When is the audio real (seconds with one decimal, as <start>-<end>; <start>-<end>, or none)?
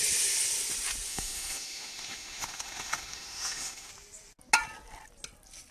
0.0-1.1; 3.9-5.7